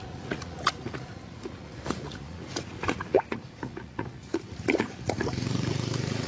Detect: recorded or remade remade